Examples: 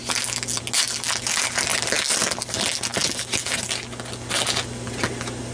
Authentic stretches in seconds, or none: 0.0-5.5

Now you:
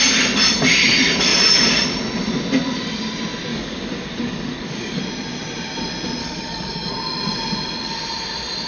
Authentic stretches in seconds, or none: 0.0-3.5; 5.0-6.2; 6.9-8.7

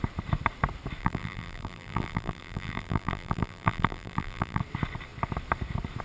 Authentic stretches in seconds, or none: 0.0-1.0; 4.6-6.0